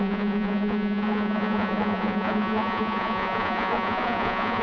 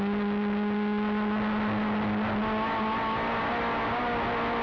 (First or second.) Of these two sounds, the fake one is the first